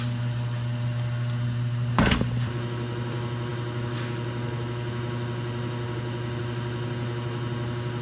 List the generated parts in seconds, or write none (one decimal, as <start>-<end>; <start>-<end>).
none

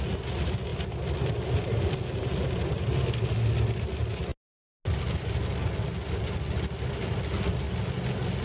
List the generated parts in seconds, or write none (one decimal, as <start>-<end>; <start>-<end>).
none

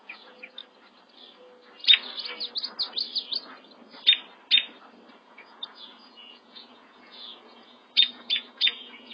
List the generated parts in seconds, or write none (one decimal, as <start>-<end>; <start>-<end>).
0.0-0.6; 5.2-9.1

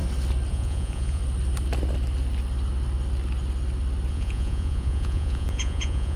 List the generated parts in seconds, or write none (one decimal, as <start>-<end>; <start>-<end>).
0.5-1.2; 4.1-6.2